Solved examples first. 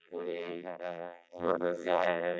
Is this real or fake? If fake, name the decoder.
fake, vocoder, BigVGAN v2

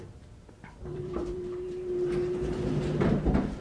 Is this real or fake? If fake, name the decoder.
fake, vocoder, BigVGAN v2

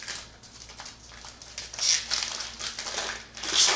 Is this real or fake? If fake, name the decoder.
real